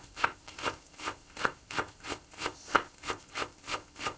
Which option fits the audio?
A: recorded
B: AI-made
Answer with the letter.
B